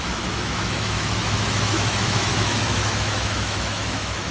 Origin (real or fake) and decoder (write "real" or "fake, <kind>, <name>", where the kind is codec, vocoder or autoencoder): fake, autoencoder, DAC-VAE